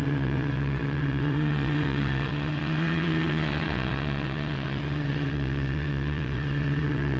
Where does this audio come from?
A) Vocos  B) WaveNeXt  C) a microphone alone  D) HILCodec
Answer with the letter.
B